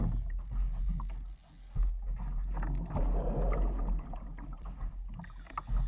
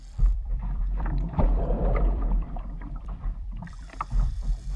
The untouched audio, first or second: first